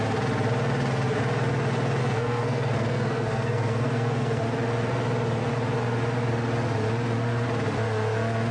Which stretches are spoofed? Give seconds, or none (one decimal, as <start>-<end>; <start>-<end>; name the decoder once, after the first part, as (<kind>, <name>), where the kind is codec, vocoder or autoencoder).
2.0-4.4 (codec, SNAC)